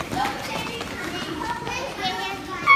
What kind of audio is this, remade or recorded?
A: remade